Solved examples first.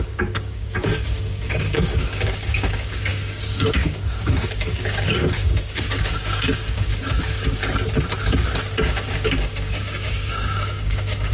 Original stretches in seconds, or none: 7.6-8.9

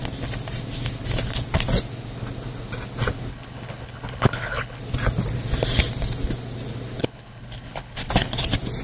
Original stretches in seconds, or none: 0.0-3.3; 4.8-7.0; 8.1-8.8